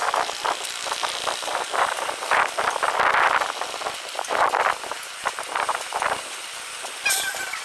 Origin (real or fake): real